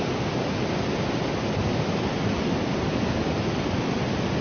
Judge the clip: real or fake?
real